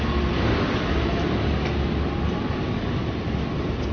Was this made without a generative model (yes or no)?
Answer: yes